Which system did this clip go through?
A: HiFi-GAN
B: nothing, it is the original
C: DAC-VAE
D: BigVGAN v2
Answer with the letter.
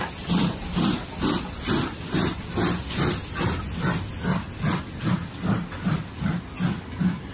B